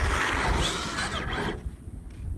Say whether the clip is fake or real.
real